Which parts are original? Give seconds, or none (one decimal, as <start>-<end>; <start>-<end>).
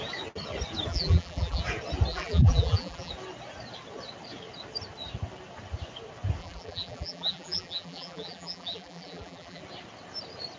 0.0-0.9; 1.6-2.1; 3.1-6.4; 9.6-10.6